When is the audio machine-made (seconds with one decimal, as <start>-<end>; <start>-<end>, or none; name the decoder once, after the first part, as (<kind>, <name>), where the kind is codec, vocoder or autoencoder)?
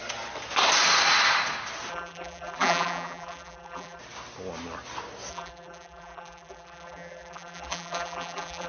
1.9-4.0 (vocoder, BigVGAN v2); 5.3-8.7